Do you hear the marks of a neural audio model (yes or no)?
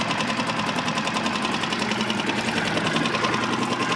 no